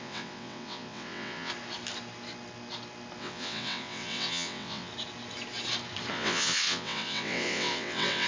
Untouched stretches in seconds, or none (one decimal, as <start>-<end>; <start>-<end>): 1.5-3.2; 4.9-6.1